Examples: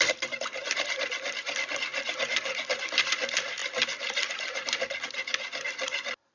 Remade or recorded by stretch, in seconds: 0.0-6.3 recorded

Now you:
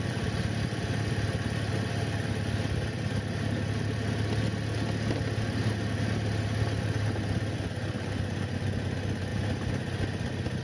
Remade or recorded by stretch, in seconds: 0.0-9.3 recorded; 9.3-10.0 remade; 10.0-10.6 recorded

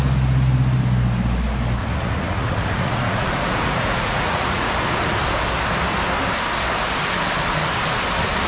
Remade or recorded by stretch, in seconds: 0.0-1.8 recorded; 1.8-4.7 remade; 4.7-8.5 recorded

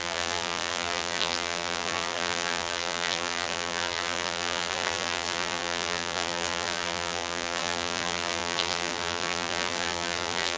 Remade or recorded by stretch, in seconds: 0.0-10.6 remade

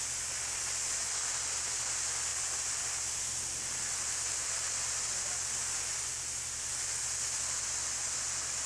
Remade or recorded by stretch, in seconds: 0.0-2.3 recorded; 2.3-5.6 remade; 5.6-8.7 recorded